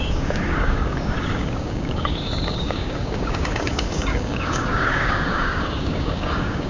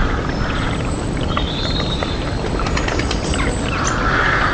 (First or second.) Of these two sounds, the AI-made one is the first